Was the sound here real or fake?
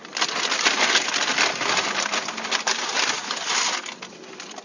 real